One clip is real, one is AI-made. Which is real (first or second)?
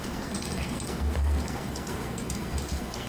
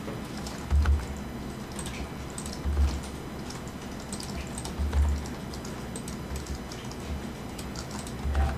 second